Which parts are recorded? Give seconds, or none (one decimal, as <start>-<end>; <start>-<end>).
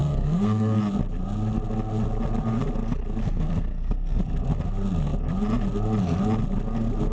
0.8-3.2; 4.2-7.1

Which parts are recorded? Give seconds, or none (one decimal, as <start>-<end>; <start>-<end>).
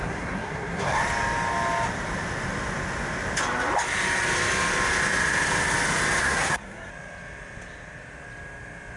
1.0-6.2; 6.9-9.0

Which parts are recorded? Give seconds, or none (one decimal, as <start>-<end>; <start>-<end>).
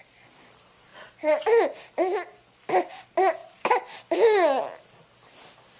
0.0-5.8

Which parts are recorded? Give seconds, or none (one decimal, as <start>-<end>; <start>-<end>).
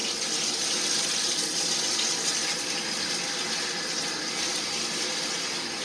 0.0-5.8